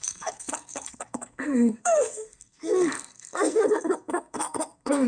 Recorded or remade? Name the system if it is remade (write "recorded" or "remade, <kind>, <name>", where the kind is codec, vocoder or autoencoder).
remade, codec, SNAC